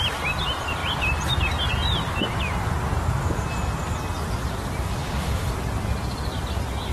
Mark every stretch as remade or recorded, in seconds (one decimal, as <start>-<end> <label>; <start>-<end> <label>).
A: 0.0-5.0 recorded; 5.0-5.5 remade; 5.5-6.9 recorded